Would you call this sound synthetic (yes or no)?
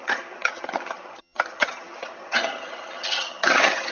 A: yes